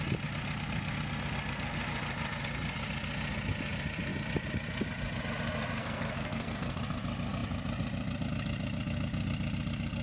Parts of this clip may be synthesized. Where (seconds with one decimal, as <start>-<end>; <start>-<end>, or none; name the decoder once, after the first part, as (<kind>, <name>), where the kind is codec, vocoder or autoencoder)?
5.8-6.8 (codec, SNAC)